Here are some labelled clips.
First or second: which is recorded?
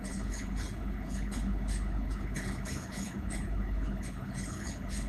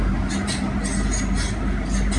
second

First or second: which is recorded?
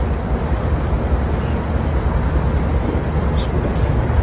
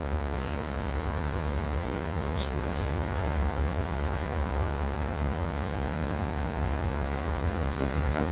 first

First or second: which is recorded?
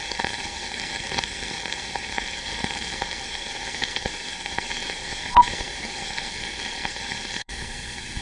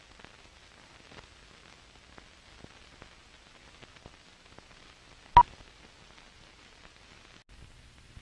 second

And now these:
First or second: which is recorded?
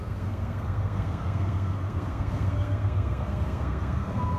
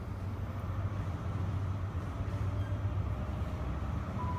second